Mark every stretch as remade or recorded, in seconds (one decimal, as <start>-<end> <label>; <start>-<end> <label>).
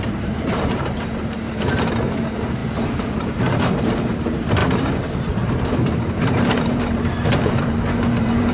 0.0-4.6 remade; 4.6-5.9 recorded; 5.9-8.5 remade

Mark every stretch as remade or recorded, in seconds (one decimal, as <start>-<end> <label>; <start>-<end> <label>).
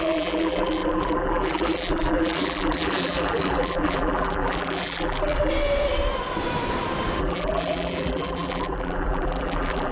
0.0-5.5 remade; 5.5-7.2 recorded; 7.2-9.9 remade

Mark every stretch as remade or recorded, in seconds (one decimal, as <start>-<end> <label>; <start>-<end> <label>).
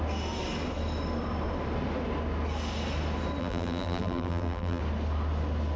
0.0-3.4 recorded; 3.4-4.8 remade; 4.8-5.8 recorded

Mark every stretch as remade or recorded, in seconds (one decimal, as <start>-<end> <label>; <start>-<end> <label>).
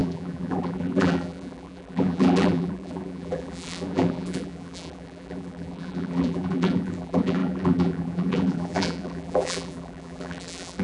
0.0-10.8 remade